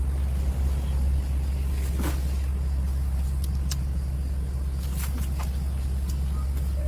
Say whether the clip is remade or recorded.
recorded